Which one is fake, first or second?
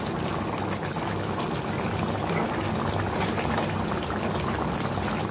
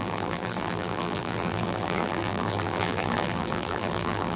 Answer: second